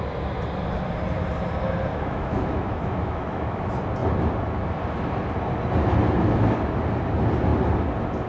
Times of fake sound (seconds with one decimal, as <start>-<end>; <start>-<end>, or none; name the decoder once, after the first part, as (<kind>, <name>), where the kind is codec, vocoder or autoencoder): 1.9-3.6 (autoencoder, DAC-VAE)